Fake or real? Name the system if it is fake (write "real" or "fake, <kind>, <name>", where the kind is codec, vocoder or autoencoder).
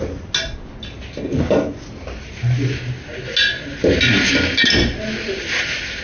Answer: real